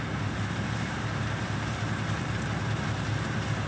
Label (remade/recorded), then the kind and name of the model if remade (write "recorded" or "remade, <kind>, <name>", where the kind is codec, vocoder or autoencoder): remade, vocoder, BigVGAN v2